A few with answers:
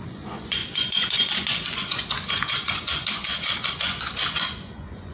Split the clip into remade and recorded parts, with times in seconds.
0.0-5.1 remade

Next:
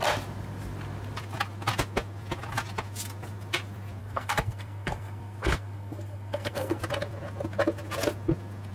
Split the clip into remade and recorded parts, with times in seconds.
0.0-4.0 recorded; 4.0-6.8 remade; 6.8-8.7 recorded

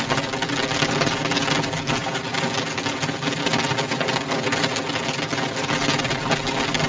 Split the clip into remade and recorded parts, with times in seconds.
0.0-6.9 recorded

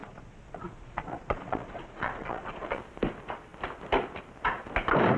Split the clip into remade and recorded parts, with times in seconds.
0.0-2.8 remade; 2.8-5.2 recorded

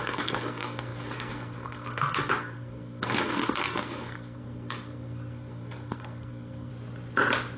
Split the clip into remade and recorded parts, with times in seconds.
0.0-6.7 remade; 6.7-7.6 recorded